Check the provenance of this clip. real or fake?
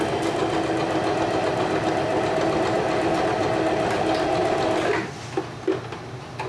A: real